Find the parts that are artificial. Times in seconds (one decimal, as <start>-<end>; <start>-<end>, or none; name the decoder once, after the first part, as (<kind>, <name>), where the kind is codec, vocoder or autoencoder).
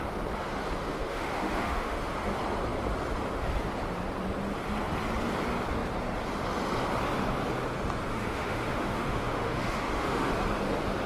0.9-2.0 (autoencoder, DAC-VAE); 8.1-10.3